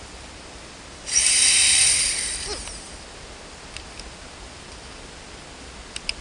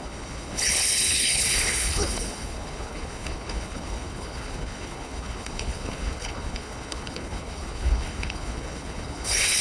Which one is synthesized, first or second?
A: second